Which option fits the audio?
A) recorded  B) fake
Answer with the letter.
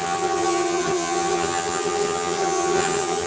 B